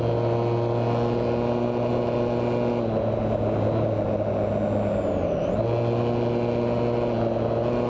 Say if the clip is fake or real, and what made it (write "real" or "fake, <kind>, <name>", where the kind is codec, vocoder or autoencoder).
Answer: real